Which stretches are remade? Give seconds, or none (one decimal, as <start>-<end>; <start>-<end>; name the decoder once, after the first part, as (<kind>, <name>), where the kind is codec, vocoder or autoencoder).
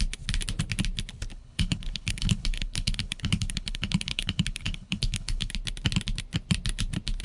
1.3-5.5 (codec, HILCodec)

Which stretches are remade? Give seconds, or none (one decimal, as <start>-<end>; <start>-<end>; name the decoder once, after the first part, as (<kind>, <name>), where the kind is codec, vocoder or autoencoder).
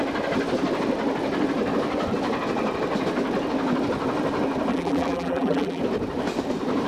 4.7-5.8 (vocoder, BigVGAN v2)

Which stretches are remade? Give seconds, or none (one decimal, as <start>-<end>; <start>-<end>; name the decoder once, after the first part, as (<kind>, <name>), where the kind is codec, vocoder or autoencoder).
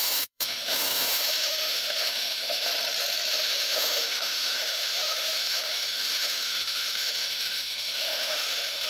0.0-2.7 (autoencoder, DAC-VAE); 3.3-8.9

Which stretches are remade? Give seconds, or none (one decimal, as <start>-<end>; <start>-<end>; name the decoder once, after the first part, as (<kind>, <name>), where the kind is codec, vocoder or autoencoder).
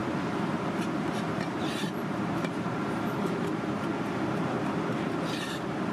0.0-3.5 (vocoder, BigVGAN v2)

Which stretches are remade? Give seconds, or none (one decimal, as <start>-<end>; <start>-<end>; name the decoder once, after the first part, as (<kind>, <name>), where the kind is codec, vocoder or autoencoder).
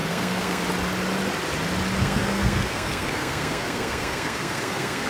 0.0-0.6 (codec, SNAC); 2.0-5.1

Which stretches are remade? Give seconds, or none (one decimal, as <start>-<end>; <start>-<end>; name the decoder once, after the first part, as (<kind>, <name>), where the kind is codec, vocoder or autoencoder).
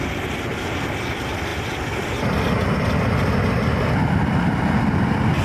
none